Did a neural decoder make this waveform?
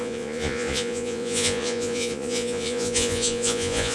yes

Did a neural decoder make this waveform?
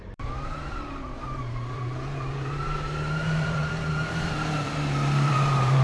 yes